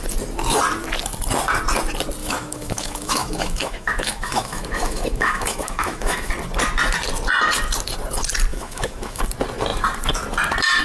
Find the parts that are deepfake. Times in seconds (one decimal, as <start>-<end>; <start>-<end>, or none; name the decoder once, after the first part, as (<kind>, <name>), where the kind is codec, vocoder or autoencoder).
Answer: 2.2-6.3 (autoencoder, DAC-VAE); 8.5-9.2